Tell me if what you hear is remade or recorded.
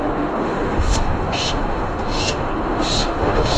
remade